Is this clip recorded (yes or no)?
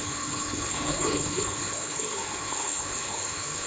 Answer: no